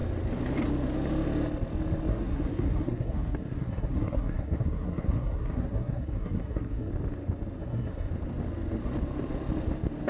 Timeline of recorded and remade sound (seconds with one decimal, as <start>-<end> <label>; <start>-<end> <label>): 0.0-2.1 recorded; 2.1-6.9 remade; 6.9-7.6 recorded; 7.6-8.1 remade; 8.1-10.1 recorded